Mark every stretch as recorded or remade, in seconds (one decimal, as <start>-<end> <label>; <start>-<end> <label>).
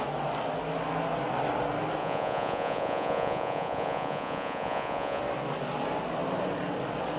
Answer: 0.0-2.0 recorded; 2.0-5.2 remade; 5.2-7.2 recorded